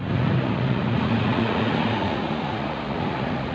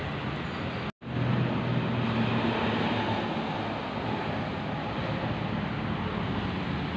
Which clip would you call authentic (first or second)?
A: second